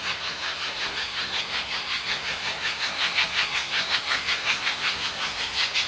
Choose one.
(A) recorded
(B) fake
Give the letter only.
B